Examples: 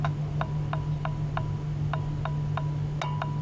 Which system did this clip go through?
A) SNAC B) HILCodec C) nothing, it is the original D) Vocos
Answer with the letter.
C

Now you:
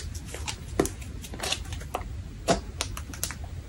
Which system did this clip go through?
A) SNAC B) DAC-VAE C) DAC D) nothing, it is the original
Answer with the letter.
D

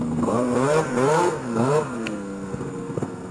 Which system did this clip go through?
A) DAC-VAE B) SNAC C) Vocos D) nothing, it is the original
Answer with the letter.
B